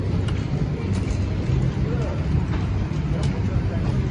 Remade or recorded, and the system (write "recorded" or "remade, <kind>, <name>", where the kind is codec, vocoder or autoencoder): remade, vocoder, BigVGAN v2